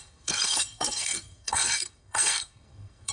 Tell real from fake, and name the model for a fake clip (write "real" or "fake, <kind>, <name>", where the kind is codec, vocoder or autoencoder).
fake, codec, SNAC